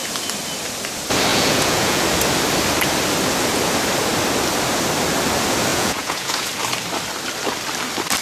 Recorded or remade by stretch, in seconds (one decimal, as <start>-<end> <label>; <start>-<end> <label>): 0.0-1.3 recorded; 1.3-2.0 remade; 2.0-5.7 recorded; 5.7-6.5 remade; 6.5-8.2 recorded